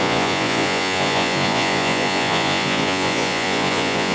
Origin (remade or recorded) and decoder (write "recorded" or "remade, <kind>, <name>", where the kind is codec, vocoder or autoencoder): remade, vocoder, Vocos